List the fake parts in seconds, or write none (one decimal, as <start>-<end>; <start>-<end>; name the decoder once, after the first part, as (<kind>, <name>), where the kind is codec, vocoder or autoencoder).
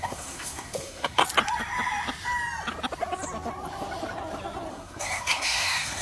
0.0-1.2 (codec, SNAC); 4.7-6.0